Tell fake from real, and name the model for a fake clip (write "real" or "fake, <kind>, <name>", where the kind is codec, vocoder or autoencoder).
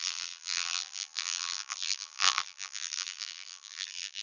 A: fake, vocoder, BigVGAN v2